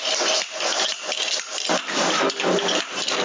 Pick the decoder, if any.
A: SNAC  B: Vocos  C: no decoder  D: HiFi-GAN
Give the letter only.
C